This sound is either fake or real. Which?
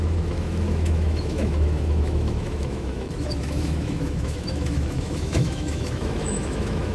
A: fake